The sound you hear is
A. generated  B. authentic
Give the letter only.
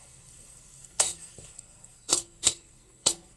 A